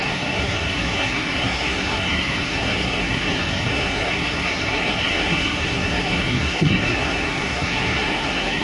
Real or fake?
fake